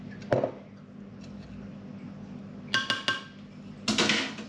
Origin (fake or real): real